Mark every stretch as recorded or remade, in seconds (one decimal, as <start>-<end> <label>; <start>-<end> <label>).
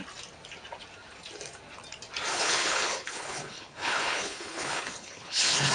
0.0-2.3 recorded; 2.3-5.7 remade